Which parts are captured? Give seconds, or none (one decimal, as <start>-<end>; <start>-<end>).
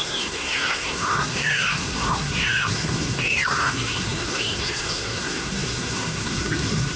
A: none